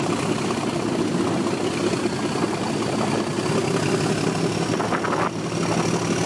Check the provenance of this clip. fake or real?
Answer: real